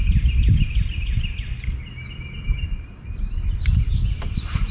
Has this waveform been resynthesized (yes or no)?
no